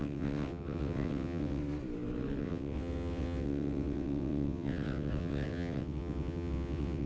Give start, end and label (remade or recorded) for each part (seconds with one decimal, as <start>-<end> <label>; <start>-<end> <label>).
0.0-1.6 remade; 1.6-2.4 recorded; 2.4-7.1 remade